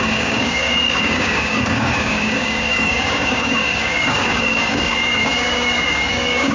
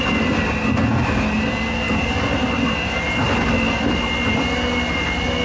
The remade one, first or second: first